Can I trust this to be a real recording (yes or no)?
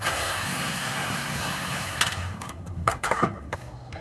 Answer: no